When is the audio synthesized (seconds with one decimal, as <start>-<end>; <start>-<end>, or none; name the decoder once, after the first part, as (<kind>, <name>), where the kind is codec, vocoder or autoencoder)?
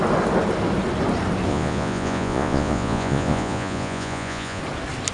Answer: 1.5-4.6 (vocoder, Vocos)